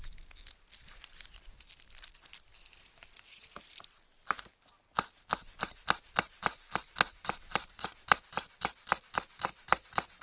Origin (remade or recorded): recorded